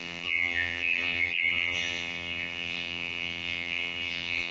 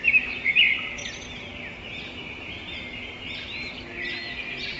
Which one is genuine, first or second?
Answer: second